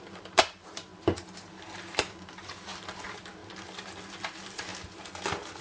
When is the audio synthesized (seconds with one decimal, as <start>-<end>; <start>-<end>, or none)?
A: 0.0-3.4; 4.2-4.7